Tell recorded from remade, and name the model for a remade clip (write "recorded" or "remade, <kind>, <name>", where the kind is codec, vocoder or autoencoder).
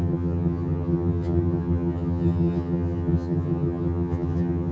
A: remade, vocoder, HiFi-GAN